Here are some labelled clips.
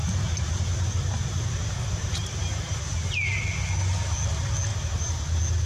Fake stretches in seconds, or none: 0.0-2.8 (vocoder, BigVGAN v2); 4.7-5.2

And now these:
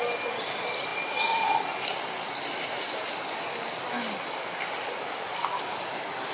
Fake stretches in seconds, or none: none

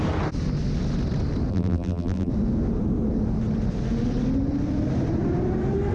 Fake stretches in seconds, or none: 1.5-2.3 (vocoder, BigVGAN v2)

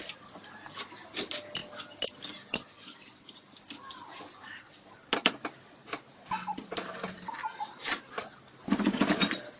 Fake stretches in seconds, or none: none

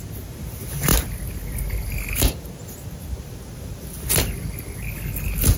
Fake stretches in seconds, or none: none

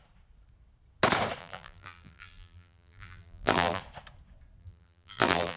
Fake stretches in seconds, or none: 1.4-3.8 (vocoder, BigVGAN v2); 4.6-5.6

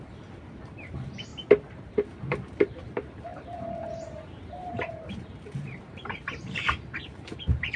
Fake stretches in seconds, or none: 0.0-1.3 (vocoder, BigVGAN v2); 1.8-7.8

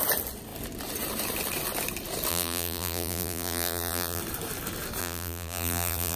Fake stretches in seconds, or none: 2.3-4.2 (vocoder, BigVGAN v2); 5.0-6.2